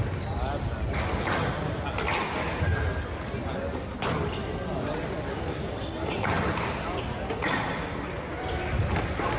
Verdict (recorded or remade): recorded